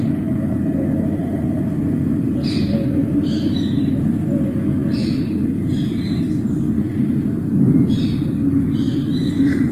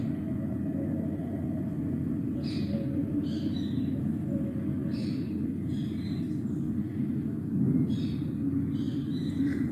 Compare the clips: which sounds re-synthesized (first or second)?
first